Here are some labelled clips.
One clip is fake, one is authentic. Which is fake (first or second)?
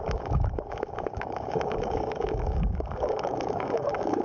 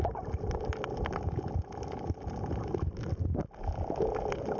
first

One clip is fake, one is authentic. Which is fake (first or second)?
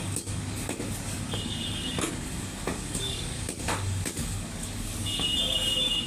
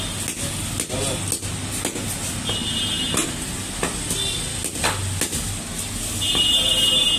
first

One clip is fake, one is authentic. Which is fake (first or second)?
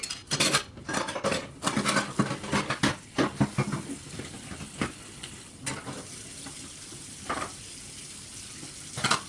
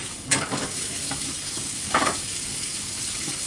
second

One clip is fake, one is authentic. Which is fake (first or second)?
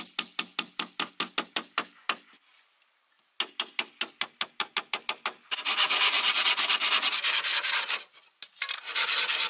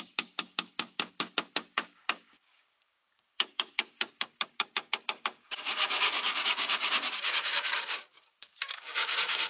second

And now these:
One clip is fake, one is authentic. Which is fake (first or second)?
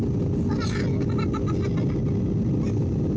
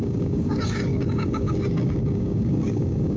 second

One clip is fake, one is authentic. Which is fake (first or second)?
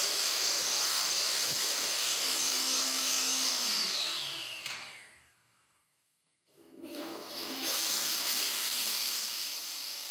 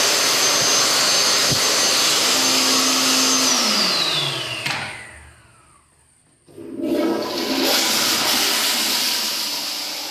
first